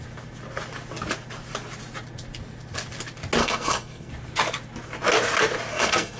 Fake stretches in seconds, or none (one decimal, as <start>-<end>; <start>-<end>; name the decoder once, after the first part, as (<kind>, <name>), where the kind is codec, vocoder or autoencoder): 3.4-4.1 (codec, SNAC); 5.7-6.2